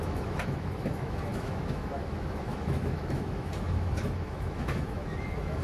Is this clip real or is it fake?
fake